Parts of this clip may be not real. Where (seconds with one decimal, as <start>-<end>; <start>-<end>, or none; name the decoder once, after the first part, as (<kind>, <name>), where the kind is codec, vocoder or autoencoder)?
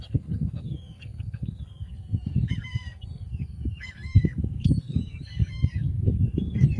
0.0-6.8 (codec, SNAC)